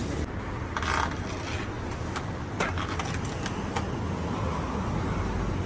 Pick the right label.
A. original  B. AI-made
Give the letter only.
A